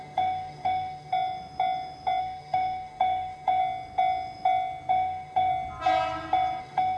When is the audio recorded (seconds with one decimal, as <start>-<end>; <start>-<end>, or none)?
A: 1.1-2.2; 3.6-4.9; 5.5-6.6